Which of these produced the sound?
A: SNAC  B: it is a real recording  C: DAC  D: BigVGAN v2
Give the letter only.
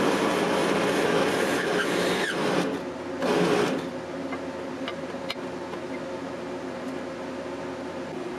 B